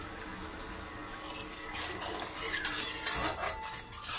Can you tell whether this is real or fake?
real